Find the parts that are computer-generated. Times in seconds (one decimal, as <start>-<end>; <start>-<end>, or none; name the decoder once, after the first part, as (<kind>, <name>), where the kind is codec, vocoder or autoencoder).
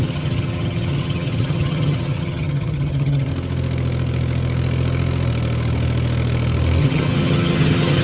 0.0-3.3 (vocoder, HiFi-GAN); 6.8-8.0